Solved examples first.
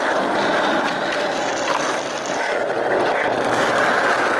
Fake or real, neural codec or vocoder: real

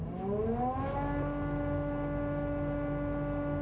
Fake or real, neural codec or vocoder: real